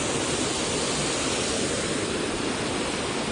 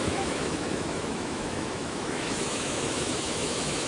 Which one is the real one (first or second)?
first